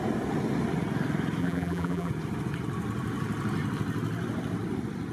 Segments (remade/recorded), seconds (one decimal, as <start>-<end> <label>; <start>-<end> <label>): 0.0-1.4 recorded; 1.4-2.1 remade; 2.1-5.1 recorded